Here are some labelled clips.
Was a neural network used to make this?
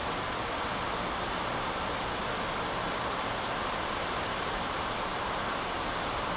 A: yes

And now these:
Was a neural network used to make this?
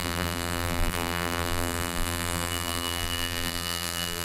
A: yes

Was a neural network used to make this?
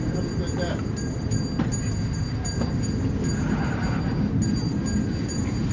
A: no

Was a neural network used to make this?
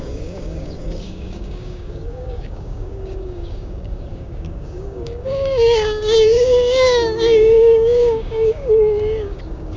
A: yes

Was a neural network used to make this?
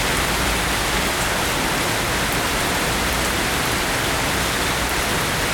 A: no